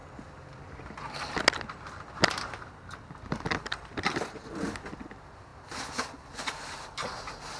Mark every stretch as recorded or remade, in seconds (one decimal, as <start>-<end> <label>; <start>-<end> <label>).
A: 0.0-7.6 recorded